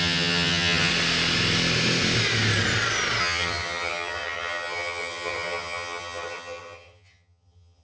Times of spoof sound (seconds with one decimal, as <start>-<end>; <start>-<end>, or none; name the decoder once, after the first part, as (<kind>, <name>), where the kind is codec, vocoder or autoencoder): 0.0-0.9 (vocoder, HiFi-GAN); 3.2-7.8